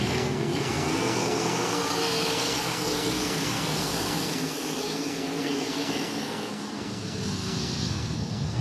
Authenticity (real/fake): fake